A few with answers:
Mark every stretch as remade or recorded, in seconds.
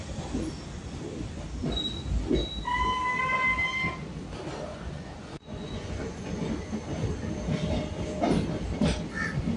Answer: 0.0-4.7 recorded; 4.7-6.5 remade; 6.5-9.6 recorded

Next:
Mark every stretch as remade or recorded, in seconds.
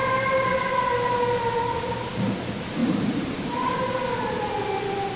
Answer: 0.0-2.8 recorded; 2.8-3.9 remade; 3.9-5.2 recorded